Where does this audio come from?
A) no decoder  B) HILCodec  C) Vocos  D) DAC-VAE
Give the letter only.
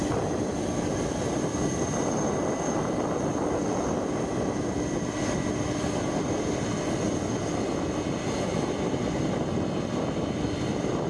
A